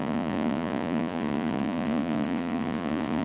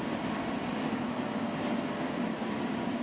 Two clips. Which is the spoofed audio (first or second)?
first